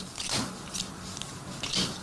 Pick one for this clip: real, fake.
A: real